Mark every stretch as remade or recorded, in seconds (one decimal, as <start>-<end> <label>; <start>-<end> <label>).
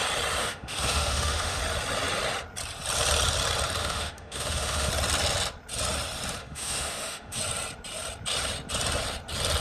0.0-0.4 recorded; 0.4-1.6 remade; 1.6-3.8 recorded; 3.8-4.9 remade; 4.9-6.4 recorded; 6.4-7.4 remade; 7.4-9.6 recorded